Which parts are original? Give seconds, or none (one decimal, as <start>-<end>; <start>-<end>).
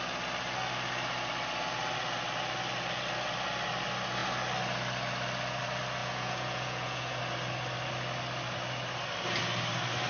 0.0-6.0; 7.2-10.1